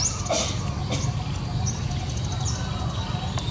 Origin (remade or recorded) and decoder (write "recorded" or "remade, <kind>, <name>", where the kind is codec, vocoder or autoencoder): recorded